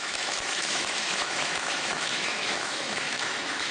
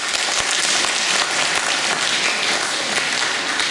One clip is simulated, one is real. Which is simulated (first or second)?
first